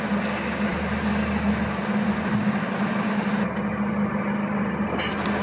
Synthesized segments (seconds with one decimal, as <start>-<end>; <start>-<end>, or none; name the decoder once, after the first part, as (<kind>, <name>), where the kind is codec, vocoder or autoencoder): none

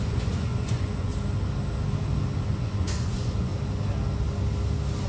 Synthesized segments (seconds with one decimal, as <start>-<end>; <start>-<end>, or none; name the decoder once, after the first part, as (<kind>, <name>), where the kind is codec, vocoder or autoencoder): 0.0-1.1 (vocoder, Vocos); 2.6-3.5

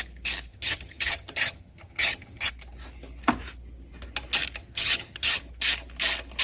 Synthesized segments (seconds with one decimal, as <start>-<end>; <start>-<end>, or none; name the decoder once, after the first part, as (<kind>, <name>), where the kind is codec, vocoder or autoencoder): 0.5-2.5 (vocoder, HiFi-GAN); 4.6-5.4

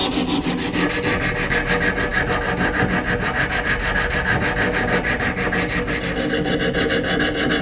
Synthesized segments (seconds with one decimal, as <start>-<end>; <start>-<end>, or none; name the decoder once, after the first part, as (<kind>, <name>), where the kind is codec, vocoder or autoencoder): none

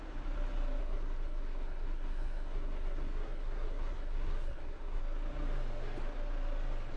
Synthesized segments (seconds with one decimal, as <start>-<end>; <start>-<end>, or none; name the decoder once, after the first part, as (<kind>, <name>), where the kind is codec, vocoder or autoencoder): 0.8-5.0 (codec, SNAC)

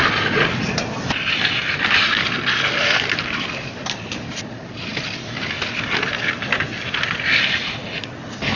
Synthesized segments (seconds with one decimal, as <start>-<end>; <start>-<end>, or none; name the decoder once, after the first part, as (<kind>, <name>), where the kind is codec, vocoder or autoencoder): none

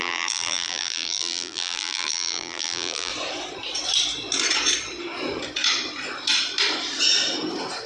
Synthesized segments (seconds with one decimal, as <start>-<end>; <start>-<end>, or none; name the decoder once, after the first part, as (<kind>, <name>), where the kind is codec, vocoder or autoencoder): 0.0-3.1 (vocoder, BigVGAN v2)